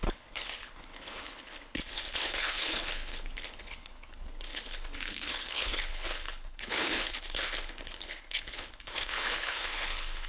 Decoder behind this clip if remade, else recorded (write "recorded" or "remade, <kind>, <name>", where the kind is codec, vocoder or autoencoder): remade, codec, HILCodec